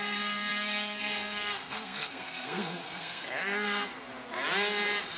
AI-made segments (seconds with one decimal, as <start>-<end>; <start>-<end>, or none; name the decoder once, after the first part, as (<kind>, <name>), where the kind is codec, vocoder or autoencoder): 0.0-3.9 (codec, SNAC)